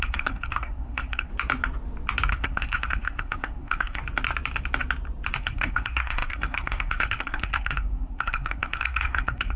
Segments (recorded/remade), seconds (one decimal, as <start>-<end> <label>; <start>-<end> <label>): 0.0-1.3 remade; 1.3-2.3 recorded; 2.3-4.0 remade; 4.0-5.4 recorded; 5.4-9.6 remade